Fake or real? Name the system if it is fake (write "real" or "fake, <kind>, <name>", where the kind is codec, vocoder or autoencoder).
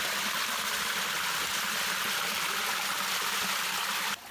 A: real